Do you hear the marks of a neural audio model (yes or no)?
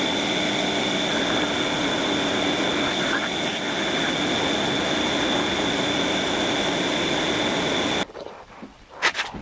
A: no